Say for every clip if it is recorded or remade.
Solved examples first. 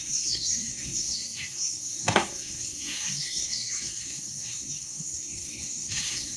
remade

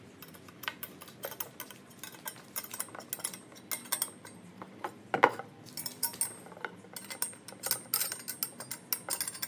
recorded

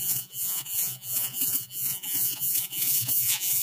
remade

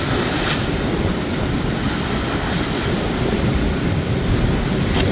recorded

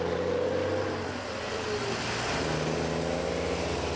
recorded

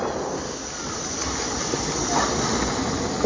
recorded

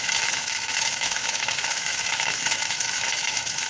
remade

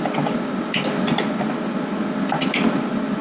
remade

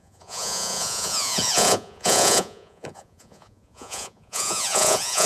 remade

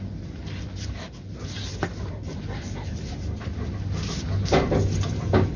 recorded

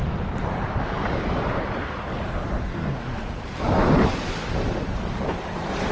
recorded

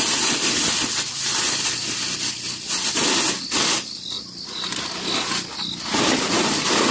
recorded